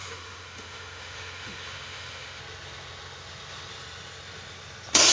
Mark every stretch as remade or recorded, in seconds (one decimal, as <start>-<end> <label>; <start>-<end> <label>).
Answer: 0.0-2.4 remade; 2.4-5.1 recorded